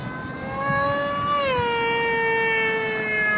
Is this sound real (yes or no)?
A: yes